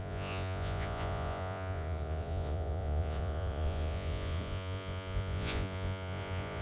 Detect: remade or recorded remade